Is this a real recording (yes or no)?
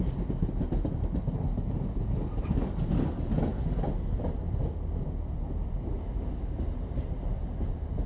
yes